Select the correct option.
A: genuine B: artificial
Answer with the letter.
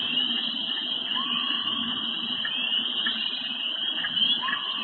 A